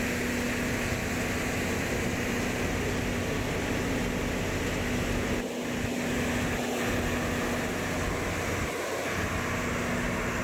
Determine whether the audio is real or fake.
real